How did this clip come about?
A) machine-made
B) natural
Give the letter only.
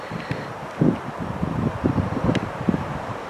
A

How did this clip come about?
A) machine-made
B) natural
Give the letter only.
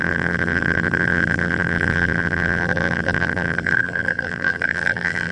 A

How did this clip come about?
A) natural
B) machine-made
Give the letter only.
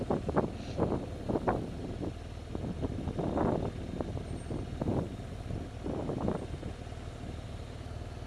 A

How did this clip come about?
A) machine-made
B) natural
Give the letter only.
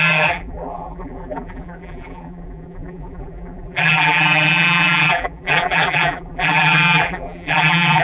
A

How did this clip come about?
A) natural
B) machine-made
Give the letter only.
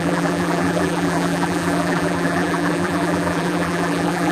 B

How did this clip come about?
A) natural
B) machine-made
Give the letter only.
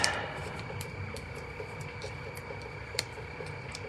B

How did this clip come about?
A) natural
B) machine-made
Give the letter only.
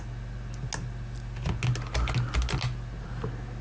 A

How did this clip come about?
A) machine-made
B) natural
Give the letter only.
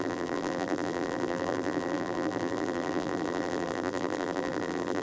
A